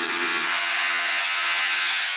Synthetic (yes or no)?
yes